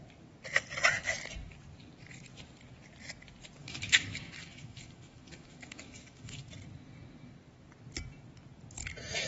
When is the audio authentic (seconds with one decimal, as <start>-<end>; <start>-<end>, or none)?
0.0-3.6; 6.4-8.8